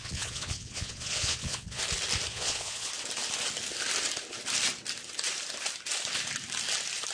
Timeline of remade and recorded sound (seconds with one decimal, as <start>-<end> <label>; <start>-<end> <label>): 0.0-1.8 remade; 1.8-2.3 recorded; 2.3-2.9 remade; 2.9-7.1 recorded